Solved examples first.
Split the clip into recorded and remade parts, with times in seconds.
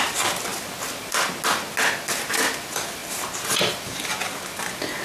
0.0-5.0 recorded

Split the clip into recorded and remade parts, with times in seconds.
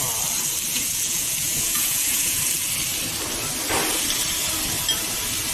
0.0-0.7 recorded; 0.7-2.4 remade; 2.4-5.5 recorded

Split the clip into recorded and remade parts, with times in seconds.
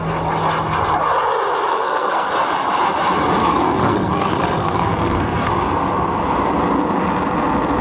0.0-1.7 recorded; 1.7-2.3 remade; 2.3-3.4 recorded; 3.4-5.5 remade; 5.5-7.8 recorded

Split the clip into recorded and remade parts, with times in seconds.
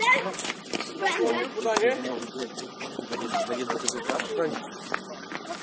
0.0-2.0 recorded; 2.0-3.2 remade; 3.2-5.6 recorded